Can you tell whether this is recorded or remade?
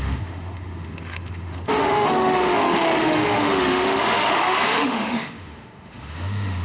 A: remade